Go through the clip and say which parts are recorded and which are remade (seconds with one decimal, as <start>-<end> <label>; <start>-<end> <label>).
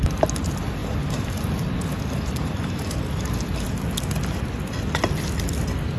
0.0-6.0 recorded